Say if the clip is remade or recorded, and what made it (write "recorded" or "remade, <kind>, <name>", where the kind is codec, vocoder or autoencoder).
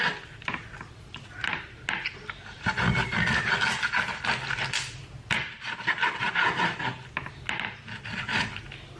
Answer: recorded